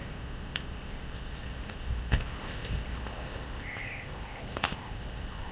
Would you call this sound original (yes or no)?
no